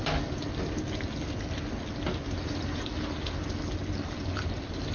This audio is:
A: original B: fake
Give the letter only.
A